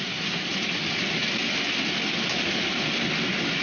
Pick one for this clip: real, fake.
real